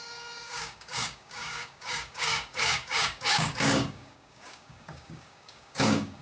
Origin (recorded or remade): remade